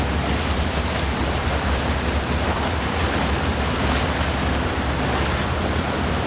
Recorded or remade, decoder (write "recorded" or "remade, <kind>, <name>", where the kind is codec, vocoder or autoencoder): recorded